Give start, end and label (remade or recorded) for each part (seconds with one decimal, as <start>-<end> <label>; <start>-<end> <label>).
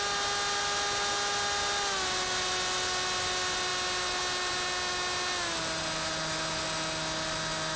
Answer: 0.0-7.8 recorded